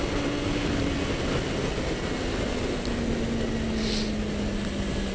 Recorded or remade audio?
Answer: recorded